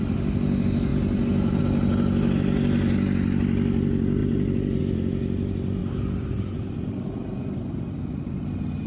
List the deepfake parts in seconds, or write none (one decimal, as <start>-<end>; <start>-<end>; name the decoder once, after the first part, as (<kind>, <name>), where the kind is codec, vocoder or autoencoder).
4.2-4.8 (vocoder, BigVGAN v2); 5.8-8.5